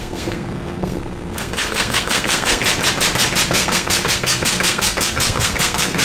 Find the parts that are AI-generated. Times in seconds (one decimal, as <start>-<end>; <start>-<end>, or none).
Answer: 0.0-2.6; 3.5-6.0

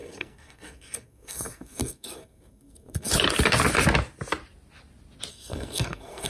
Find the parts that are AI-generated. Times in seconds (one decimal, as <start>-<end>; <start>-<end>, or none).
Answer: 0.0-3.1; 5.3-6.3

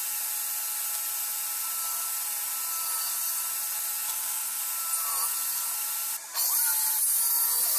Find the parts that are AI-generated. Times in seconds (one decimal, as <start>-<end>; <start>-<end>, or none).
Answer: 4.1-4.6

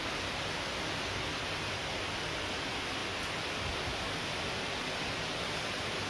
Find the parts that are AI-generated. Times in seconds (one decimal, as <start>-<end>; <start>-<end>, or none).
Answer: none

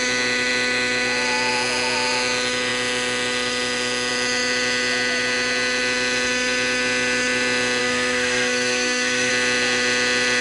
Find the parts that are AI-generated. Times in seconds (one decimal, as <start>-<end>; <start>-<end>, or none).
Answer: 7.8-9.3